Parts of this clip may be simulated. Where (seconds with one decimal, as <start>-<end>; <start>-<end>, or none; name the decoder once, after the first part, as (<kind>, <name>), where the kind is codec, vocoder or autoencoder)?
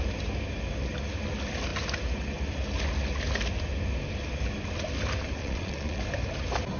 5.4-6.0 (vocoder, Vocos)